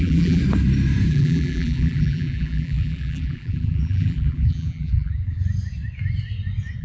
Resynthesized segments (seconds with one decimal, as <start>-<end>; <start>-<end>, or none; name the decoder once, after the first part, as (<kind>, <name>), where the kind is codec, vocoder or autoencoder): 0.0-0.4 (vocoder, BigVGAN v2); 1.1-5.4